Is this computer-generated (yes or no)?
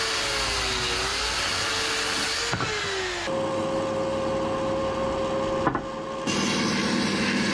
no